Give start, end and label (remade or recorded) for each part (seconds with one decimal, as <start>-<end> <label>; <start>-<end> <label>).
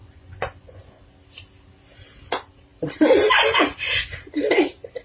0.0-1.0 remade; 1.0-5.0 recorded